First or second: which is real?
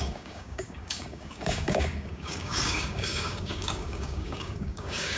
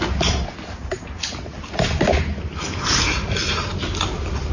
second